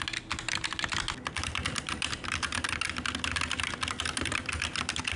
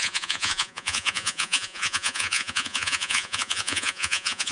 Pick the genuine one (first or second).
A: first